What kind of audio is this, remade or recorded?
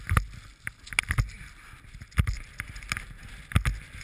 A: recorded